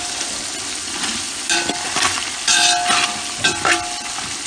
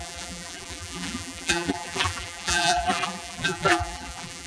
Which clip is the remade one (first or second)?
second